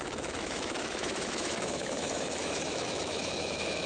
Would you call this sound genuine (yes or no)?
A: no